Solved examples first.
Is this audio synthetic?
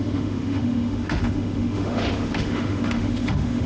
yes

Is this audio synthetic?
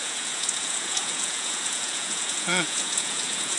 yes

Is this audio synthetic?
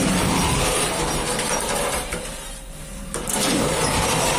yes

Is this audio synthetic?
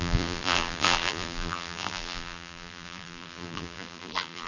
yes